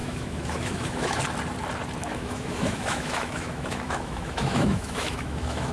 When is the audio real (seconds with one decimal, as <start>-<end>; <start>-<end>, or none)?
1.2-2.0